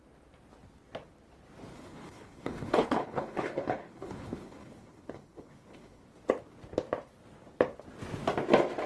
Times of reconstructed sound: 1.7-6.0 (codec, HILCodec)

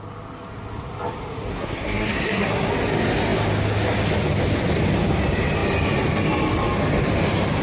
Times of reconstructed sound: 1.5-2.7 (codec, SNAC)

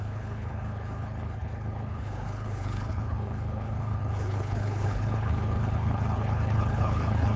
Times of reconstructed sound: 0.0-7.4 (codec, HILCodec)